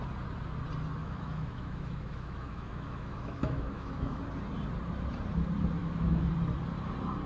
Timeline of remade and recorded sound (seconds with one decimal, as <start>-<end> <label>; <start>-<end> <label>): 0.0-1.0 recorded; 1.0-4.2 remade; 4.2-5.8 recorded; 5.8-6.3 remade; 6.3-7.3 recorded